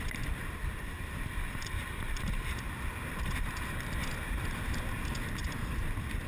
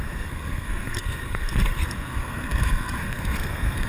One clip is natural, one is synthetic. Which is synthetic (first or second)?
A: second